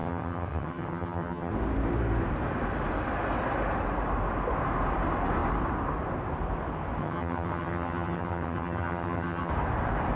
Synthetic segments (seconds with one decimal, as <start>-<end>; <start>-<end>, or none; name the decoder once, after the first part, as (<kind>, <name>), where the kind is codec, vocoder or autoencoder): 0.0-1.5 (vocoder, HiFi-GAN); 7.0-9.5